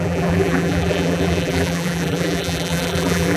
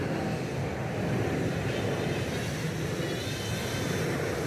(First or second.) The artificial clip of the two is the first